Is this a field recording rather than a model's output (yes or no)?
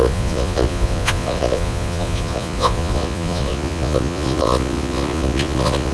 no